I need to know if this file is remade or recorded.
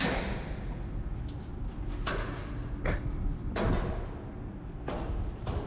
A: recorded